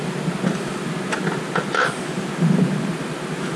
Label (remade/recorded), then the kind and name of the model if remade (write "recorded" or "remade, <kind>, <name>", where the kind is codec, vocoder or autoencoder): recorded